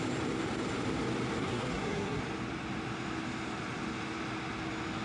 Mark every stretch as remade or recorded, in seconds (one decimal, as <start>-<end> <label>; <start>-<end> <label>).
0.0-1.4 recorded; 1.4-2.2 remade; 2.2-5.0 recorded